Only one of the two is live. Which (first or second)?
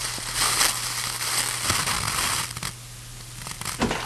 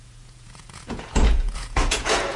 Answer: first